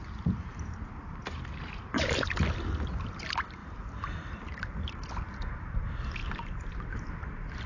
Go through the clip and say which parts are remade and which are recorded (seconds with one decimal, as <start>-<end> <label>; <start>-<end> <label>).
0.0-7.7 recorded